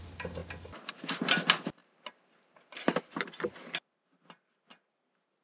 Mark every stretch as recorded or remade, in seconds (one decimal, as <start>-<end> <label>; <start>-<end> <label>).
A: 0.0-5.4 recorded